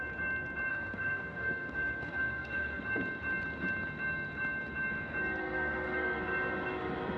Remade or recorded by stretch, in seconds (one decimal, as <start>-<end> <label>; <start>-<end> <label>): 0.0-0.7 recorded; 0.7-2.8 remade; 2.8-5.4 recorded; 5.4-6.2 remade; 6.2-7.2 recorded